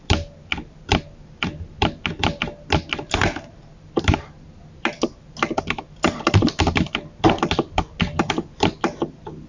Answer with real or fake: real